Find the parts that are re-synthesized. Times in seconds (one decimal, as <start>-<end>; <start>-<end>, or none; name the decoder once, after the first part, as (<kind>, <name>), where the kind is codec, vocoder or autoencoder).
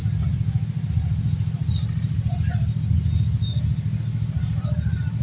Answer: none